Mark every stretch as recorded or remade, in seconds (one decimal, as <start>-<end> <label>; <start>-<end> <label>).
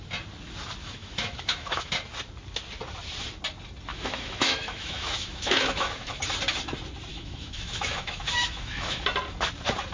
0.0-0.8 recorded; 0.8-1.9 remade; 1.9-3.9 recorded; 3.9-6.2 remade; 6.2-7.1 recorded; 7.1-9.0 remade; 9.0-9.9 recorded